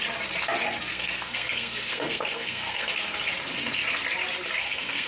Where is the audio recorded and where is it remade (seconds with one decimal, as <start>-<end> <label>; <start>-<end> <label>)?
0.0-0.9 recorded; 0.9-2.9 remade; 2.9-4.6 recorded; 4.6-5.1 remade